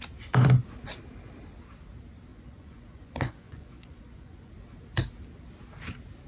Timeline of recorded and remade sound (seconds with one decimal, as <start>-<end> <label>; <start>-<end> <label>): 0.0-2.3 recorded; 2.3-4.5 remade; 4.5-6.3 recorded